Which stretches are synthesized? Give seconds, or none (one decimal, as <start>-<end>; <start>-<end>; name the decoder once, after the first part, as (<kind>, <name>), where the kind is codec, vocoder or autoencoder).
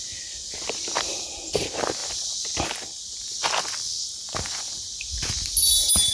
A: none